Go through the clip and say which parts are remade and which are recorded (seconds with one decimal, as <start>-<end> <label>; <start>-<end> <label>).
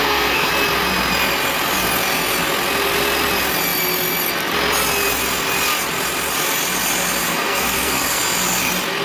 0.0-0.5 remade; 0.5-7.2 recorded; 7.2-8.2 remade; 8.2-9.0 recorded